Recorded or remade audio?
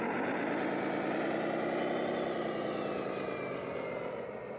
recorded